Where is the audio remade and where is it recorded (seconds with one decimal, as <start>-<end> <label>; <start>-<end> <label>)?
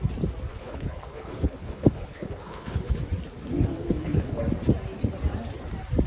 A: 0.0-0.5 recorded; 0.5-3.0 remade; 3.0-3.8 recorded; 3.8-4.4 remade; 4.4-6.1 recorded